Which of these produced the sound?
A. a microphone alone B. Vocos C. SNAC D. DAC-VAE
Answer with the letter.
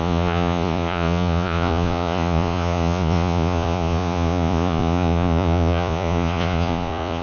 B